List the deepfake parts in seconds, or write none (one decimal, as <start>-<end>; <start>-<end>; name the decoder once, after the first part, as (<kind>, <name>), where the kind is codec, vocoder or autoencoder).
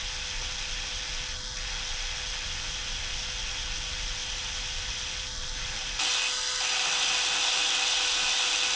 4.2-5.7 (vocoder, BigVGAN v2)